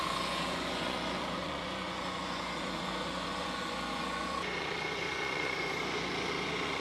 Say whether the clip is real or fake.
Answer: fake